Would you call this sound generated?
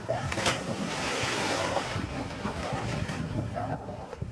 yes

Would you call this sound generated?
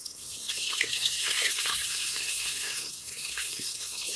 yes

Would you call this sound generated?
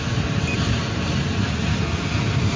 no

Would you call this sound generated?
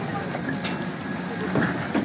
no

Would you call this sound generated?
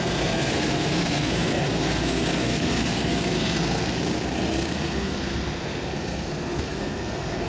yes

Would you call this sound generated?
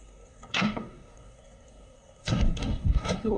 yes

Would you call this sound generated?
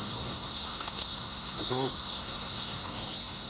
yes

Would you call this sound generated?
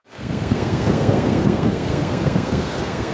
yes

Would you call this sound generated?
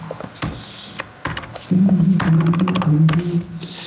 no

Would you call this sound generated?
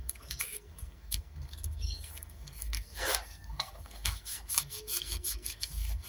yes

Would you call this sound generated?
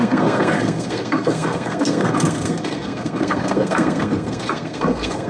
yes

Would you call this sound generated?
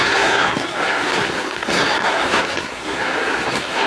yes